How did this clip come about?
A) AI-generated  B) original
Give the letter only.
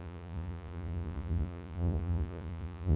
A